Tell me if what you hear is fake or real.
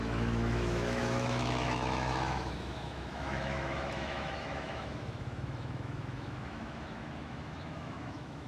fake